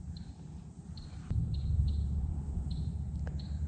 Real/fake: fake